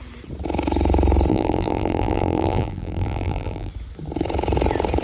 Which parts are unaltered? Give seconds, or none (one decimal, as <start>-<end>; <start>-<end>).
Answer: 0.0-1.3; 3.7-5.0